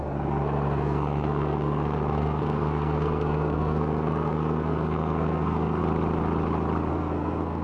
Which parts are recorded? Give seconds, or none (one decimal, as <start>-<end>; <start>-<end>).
5.8-6.9

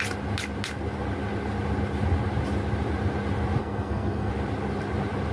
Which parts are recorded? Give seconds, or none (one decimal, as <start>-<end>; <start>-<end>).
0.0-3.6; 4.3-5.3

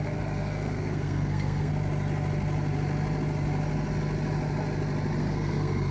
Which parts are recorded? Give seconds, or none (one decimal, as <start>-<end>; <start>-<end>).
1.7-5.2